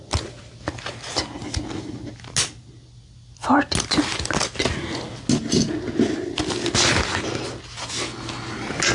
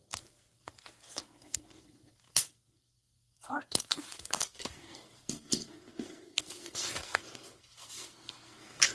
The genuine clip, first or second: first